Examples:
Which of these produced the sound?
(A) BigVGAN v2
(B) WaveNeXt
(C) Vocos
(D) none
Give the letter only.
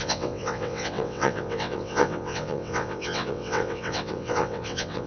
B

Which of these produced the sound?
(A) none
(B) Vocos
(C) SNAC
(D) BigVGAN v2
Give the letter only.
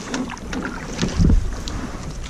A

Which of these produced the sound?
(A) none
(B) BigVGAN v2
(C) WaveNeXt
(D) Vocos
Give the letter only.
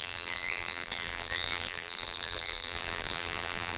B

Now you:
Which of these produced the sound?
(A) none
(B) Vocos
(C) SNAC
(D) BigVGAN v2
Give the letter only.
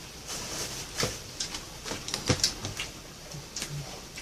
A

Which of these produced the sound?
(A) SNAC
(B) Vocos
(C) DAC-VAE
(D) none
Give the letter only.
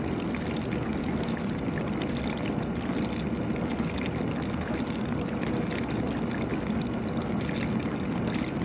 D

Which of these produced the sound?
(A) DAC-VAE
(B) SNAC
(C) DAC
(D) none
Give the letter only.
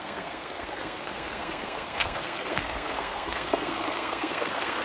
B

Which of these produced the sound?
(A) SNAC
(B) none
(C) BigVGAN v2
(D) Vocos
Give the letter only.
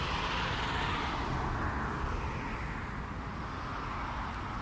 B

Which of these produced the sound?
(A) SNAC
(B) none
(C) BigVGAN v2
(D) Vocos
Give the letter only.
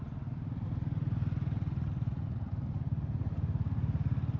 B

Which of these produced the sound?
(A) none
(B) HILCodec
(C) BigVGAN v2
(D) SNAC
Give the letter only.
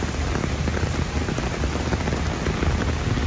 A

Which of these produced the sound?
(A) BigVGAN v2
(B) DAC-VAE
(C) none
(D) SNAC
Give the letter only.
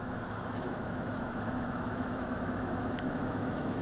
B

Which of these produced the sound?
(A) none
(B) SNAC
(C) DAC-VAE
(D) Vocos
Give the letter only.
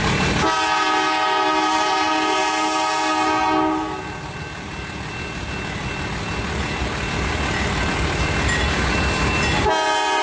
A